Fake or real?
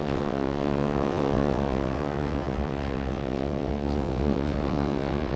fake